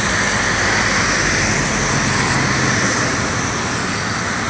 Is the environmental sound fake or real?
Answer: real